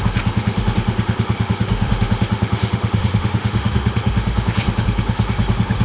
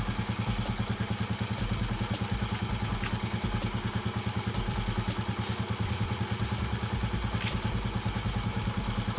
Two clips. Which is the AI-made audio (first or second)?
first